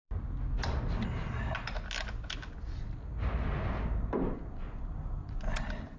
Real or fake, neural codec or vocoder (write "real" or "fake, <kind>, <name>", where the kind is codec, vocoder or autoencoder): real